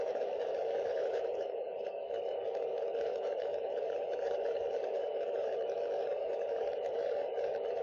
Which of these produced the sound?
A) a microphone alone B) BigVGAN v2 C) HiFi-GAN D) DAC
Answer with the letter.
D